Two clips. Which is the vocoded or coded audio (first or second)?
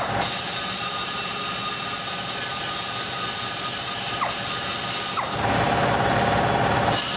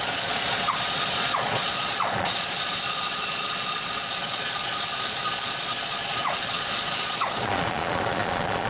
second